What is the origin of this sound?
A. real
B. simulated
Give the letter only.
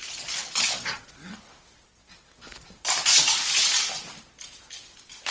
A